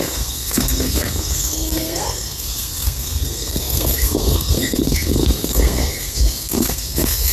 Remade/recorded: remade